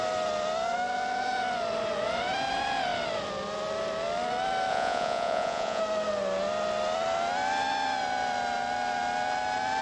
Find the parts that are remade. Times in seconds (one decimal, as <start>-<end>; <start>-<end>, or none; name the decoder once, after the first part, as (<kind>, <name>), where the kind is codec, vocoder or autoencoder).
4.7-5.8 (vocoder, Vocos)